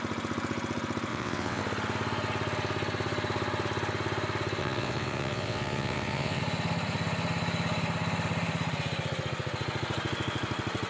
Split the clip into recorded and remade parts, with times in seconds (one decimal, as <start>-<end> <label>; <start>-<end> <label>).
0.0-1.1 recorded; 1.1-1.6 remade; 1.6-4.6 recorded; 4.6-6.4 remade; 6.4-10.9 recorded